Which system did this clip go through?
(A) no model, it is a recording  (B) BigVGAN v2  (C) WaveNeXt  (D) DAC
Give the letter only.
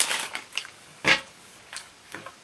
D